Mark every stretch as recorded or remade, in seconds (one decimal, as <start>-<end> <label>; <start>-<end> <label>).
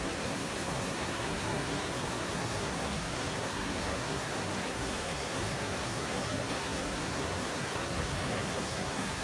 0.0-9.2 remade